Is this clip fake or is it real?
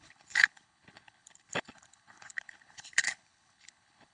fake